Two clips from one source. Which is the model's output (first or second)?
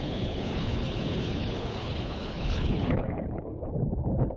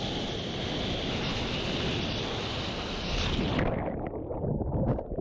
first